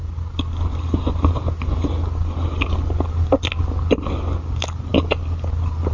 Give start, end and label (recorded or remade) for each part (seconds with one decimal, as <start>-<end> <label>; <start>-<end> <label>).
0.0-5.9 recorded